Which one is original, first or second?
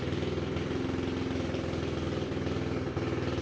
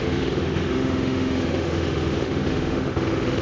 first